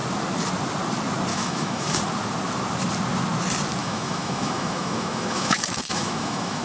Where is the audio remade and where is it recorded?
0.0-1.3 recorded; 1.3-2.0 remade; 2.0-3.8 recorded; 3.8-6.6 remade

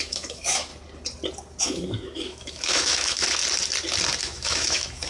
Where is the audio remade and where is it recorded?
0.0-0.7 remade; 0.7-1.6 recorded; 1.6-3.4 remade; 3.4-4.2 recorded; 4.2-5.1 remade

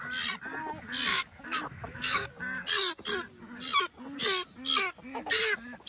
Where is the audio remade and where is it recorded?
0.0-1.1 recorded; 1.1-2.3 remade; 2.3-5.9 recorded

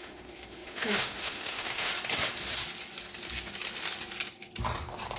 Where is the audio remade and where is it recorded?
0.0-1.9 remade; 1.9-5.2 recorded

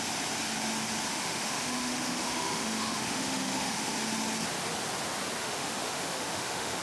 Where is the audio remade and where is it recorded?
0.0-1.1 recorded; 1.1-3.9 remade; 3.9-5.4 recorded; 5.4-6.8 remade